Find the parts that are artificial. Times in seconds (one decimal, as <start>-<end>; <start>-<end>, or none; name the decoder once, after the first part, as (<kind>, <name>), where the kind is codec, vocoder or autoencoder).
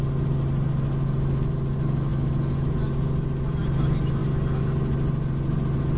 none